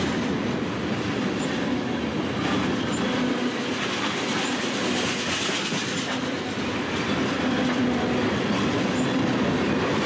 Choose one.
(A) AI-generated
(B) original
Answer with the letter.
B